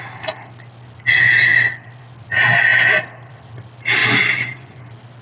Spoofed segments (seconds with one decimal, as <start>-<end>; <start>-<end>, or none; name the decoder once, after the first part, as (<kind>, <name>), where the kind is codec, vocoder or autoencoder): 4.0-4.8 (vocoder, Vocos)